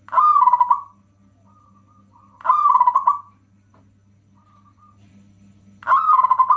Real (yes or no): yes